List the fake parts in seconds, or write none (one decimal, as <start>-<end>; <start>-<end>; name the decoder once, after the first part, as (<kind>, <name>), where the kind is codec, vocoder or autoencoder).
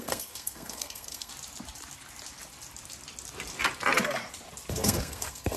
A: 0.0-1.3 (codec, SNAC); 4.7-5.6